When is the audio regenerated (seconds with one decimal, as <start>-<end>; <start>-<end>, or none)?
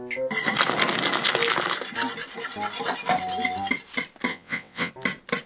4.3-4.9